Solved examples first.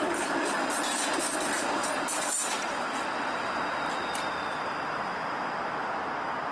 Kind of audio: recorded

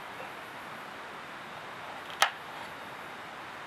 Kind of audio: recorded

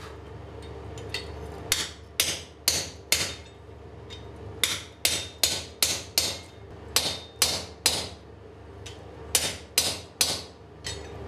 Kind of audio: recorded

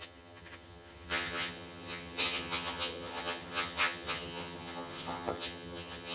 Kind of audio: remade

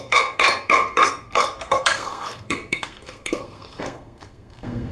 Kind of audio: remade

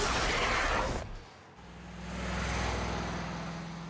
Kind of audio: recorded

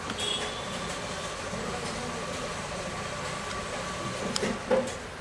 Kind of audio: recorded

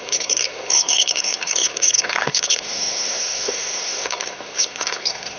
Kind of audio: remade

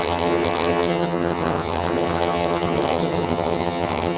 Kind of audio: remade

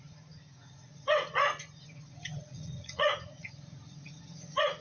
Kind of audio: remade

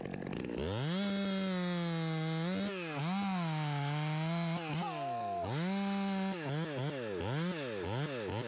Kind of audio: recorded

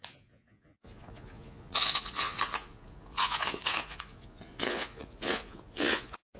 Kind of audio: remade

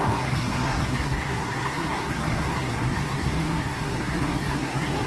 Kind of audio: remade